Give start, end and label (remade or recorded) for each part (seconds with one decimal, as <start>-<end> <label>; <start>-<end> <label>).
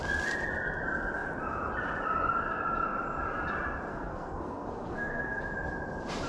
0.0-3.9 recorded; 3.9-5.4 remade; 5.4-6.3 recorded